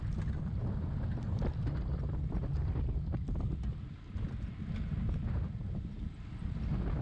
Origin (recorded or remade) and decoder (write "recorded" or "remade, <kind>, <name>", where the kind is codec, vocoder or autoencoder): recorded